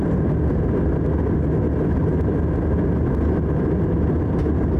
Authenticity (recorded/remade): recorded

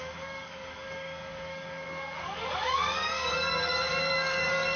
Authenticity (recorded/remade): remade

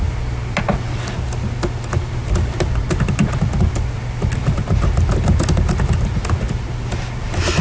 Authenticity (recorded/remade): recorded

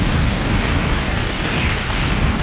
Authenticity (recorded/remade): remade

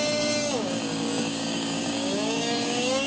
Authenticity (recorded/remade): remade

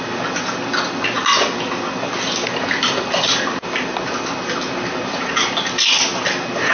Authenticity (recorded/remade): recorded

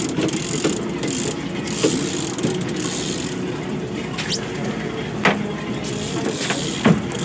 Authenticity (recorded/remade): recorded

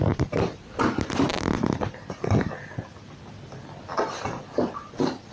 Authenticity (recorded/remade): recorded